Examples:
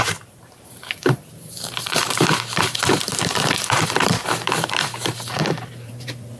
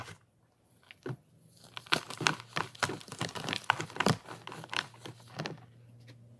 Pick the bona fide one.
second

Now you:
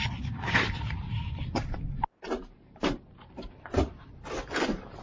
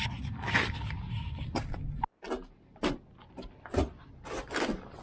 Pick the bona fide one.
second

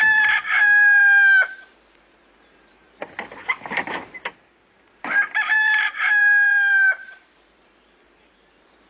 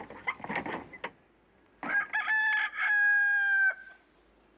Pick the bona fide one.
second